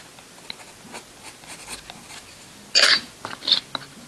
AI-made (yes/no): no